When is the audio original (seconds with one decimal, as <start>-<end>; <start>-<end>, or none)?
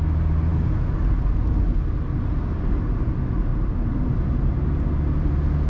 0.0-5.7